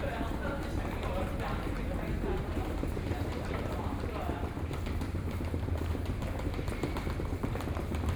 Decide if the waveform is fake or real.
fake